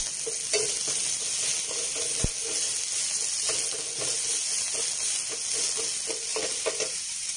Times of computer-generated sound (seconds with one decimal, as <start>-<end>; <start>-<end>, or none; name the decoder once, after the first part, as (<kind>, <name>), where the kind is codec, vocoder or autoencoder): 6.3-7.4 (vocoder, BigVGAN v2)